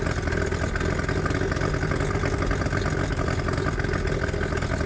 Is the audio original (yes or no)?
yes